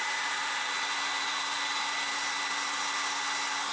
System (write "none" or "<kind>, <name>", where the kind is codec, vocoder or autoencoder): none